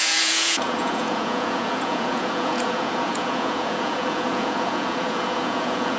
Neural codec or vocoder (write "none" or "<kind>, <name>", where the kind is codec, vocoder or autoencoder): vocoder, Vocos